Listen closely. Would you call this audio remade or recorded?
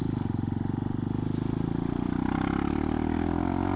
recorded